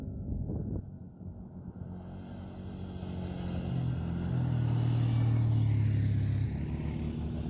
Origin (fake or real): real